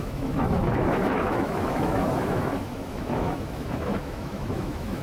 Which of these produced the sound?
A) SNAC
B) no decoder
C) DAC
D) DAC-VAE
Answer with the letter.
D